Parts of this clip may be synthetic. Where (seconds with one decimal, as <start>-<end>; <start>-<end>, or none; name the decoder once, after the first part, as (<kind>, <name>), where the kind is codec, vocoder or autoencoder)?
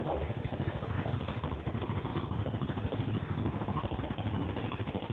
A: 0.0-5.1 (autoencoder, DAC-VAE)